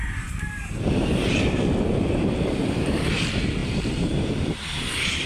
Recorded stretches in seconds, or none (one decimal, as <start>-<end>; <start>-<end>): 1.2-1.9